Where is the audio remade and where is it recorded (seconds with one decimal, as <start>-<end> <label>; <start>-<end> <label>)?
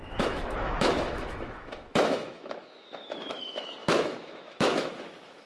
0.0-5.5 remade